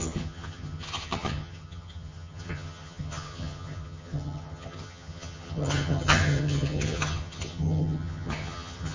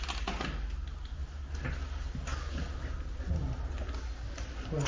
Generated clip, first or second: first